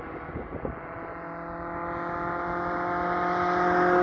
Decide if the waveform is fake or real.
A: real